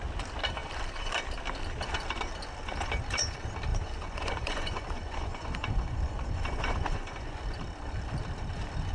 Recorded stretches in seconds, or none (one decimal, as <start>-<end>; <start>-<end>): 0.0-3.7; 7.4-8.9